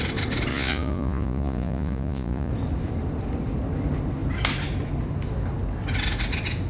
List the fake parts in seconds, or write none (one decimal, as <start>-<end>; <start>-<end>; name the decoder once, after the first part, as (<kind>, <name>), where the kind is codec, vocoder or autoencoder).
0.5-2.5 (vocoder, Vocos)